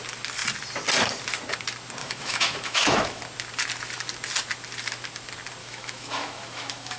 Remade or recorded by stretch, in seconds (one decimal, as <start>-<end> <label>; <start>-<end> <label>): 0.0-2.0 recorded; 2.0-3.2 remade; 3.2-5.6 recorded; 5.6-7.0 remade